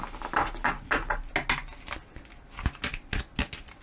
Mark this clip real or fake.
real